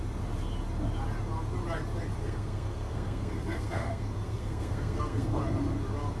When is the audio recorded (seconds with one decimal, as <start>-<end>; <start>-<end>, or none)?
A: 0.0-2.2; 5.4-6.2